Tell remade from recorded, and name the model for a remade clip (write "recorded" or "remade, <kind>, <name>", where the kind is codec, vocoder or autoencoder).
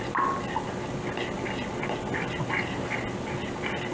recorded